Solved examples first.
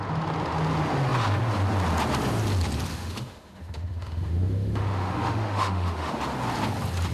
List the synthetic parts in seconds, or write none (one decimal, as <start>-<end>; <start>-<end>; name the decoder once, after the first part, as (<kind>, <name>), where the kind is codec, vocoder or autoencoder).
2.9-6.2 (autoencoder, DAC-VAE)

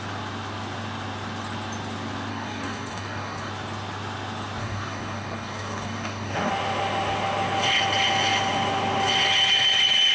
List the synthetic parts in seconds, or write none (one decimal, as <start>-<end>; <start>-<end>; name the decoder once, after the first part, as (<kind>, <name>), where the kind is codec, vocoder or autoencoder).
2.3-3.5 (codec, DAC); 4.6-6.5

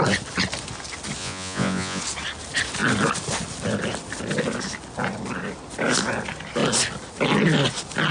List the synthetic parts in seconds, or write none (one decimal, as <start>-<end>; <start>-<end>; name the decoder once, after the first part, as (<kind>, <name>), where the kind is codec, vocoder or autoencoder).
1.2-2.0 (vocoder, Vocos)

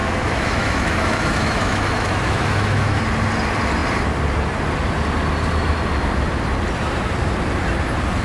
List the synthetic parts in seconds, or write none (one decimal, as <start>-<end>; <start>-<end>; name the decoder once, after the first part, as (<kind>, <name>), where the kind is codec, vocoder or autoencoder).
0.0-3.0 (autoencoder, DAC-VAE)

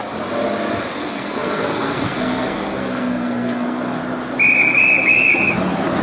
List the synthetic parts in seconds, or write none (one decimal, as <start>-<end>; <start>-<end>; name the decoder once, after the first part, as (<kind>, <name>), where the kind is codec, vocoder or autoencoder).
1.0-4.0 (codec, SNAC)